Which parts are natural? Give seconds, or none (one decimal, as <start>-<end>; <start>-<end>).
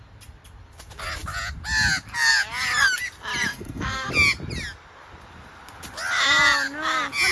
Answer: 0.0-3.5; 4.1-7.3